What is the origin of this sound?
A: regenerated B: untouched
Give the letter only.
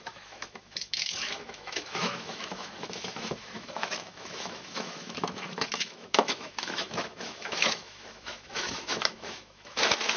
A